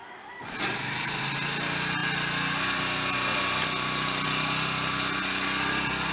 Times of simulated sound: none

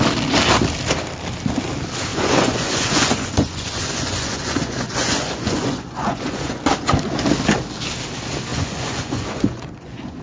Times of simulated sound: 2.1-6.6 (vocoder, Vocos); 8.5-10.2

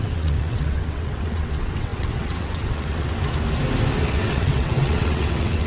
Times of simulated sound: 0.0-3.2 (vocoder, WaveNeXt); 4.1-5.7